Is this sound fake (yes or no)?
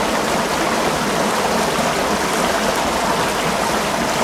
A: no